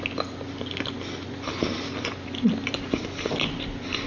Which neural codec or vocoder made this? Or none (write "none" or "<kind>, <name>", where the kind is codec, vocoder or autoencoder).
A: none